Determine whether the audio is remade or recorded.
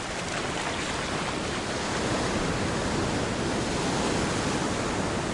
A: recorded